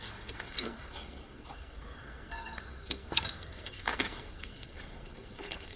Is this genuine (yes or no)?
no